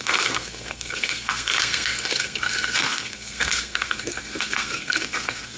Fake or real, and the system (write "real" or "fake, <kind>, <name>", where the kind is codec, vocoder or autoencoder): fake, codec, SNAC